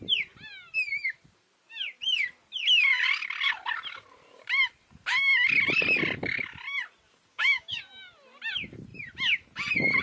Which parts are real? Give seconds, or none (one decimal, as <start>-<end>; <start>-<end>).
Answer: 0.0-7.3; 7.8-10.0